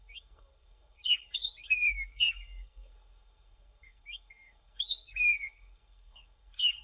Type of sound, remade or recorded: remade